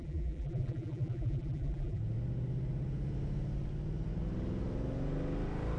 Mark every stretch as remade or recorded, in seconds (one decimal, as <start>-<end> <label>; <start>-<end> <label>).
0.0-2.0 remade; 2.0-5.8 recorded